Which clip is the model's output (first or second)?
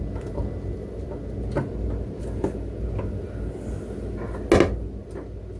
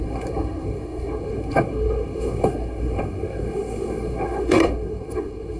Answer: second